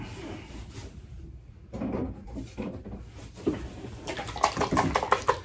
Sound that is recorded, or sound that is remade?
recorded